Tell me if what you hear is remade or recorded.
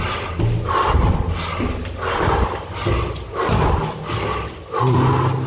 recorded